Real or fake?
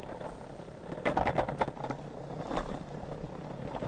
real